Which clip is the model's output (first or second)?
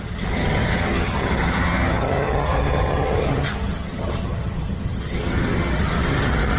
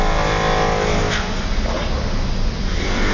first